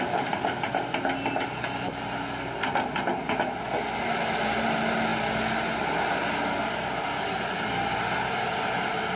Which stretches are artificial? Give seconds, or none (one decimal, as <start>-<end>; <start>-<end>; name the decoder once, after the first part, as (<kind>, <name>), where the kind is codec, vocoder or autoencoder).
none